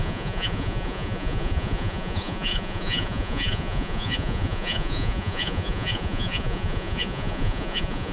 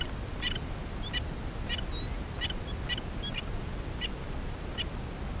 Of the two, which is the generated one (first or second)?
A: first